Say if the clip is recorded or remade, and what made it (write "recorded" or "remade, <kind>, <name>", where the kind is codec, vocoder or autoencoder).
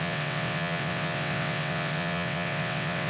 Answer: remade, vocoder, WaveNeXt